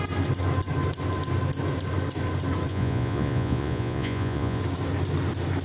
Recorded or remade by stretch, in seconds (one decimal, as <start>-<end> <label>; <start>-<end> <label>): 0.0-2.7 recorded; 2.7-4.6 remade; 4.6-5.6 recorded